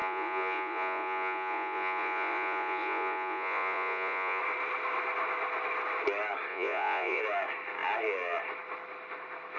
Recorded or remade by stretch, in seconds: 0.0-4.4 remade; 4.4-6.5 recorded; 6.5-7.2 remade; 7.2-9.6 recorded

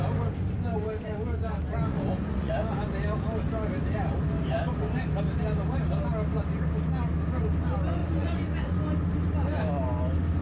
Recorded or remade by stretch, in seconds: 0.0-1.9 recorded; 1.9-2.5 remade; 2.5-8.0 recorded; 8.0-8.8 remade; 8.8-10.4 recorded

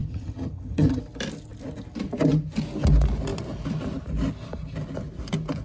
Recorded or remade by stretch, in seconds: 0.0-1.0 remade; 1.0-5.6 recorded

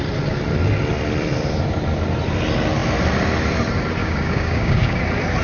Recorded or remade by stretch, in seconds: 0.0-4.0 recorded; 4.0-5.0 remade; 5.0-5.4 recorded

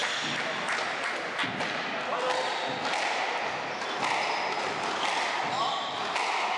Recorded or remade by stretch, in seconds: 0.0-6.6 recorded